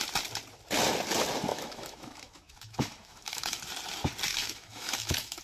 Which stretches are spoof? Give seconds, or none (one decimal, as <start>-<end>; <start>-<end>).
1.5-3.6; 4.3-5.4